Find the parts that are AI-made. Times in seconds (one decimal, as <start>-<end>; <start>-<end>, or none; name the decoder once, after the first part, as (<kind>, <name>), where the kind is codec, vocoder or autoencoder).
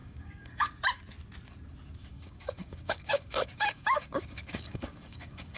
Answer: 0.0-0.8 (codec, DAC); 2.0-5.6